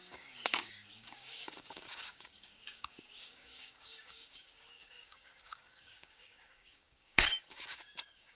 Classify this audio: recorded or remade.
remade